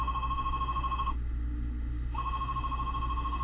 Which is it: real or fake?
fake